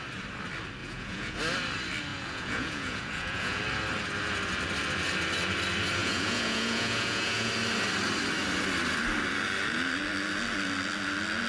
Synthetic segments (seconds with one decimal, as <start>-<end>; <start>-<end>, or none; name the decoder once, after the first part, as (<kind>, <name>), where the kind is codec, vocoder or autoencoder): 0.8-1.4 (vocoder, Vocos); 2.1-3.6; 6.0-7.5